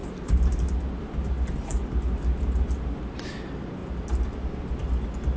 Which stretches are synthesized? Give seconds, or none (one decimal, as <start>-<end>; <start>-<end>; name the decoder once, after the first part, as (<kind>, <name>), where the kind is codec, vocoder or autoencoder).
none